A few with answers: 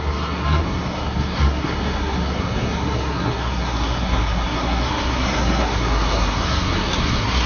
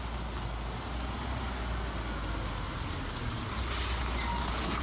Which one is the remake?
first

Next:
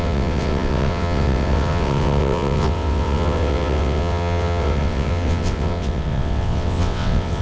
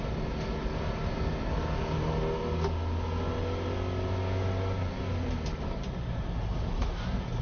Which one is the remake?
first